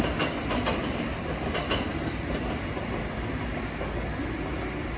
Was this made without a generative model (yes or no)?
yes